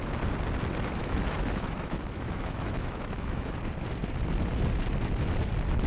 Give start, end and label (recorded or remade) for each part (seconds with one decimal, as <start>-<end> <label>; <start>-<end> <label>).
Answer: 0.0-1.0 recorded; 1.0-3.5 remade; 3.5-5.9 recorded